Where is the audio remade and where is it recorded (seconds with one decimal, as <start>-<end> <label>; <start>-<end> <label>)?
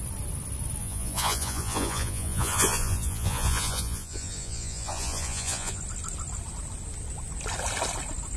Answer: 0.0-0.8 recorded; 0.8-5.8 remade; 5.8-8.4 recorded